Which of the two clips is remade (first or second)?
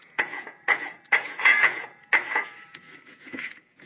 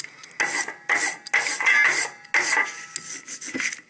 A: first